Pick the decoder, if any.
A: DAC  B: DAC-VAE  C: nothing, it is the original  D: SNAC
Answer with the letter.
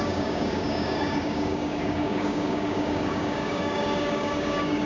A